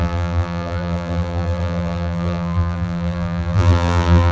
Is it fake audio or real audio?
fake